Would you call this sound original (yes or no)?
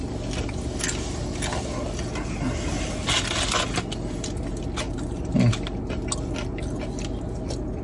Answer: yes